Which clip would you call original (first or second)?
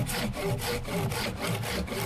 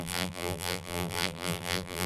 first